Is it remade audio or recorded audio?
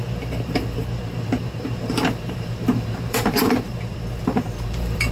remade